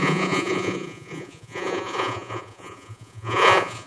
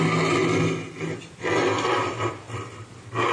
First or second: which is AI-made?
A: first